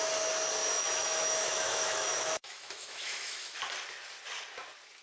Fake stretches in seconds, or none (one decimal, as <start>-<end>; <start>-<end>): 0.6-3.6